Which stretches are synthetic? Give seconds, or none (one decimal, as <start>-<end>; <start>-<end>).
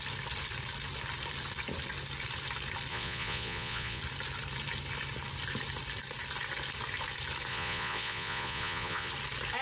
2.9-4.0; 7.5-9.1